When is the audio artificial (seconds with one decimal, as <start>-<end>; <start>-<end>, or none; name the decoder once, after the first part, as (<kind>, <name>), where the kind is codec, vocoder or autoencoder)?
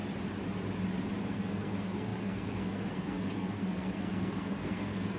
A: 1.2-5.2 (codec, SNAC)